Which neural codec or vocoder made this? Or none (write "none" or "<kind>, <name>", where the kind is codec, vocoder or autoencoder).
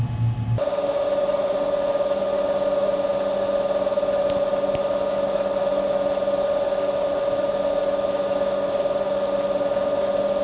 none